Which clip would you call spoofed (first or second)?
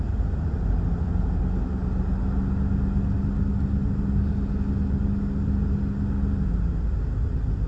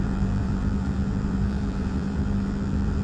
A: second